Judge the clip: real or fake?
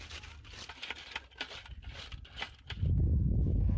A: real